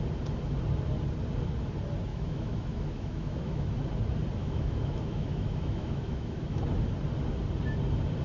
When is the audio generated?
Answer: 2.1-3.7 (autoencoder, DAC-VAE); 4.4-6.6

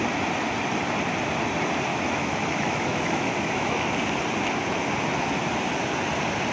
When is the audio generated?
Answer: 1.9-3.8 (autoencoder, DAC-VAE)

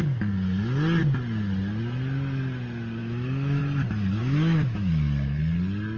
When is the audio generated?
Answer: 3.0-3.6 (autoencoder, DAC-VAE); 4.2-4.9

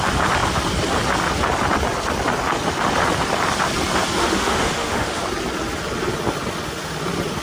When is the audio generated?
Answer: 4.2-5.2 (autoencoder, DAC-VAE)

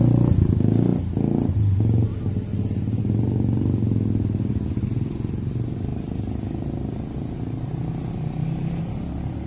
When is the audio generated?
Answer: none